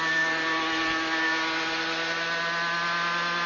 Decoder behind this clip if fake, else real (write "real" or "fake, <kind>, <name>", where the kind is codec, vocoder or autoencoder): real